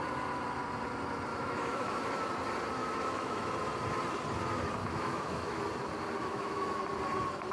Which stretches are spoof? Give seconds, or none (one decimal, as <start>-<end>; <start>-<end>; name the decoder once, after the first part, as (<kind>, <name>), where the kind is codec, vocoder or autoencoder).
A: 1.3-2.0 (autoencoder, DAC-VAE); 2.8-3.5; 4.8-5.6; 6.2-6.8